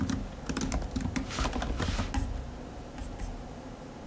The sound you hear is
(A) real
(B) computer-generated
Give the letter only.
A